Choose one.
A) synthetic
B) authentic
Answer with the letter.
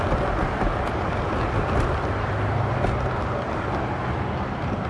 B